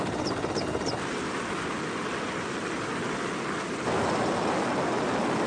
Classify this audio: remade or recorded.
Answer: recorded